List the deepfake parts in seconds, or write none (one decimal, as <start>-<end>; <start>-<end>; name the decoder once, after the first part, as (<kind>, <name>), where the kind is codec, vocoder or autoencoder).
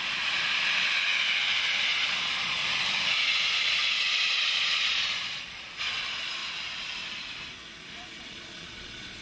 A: 0.0-0.4 (vocoder, Vocos); 1.8-2.6; 3.2-6.4; 8.2-9.2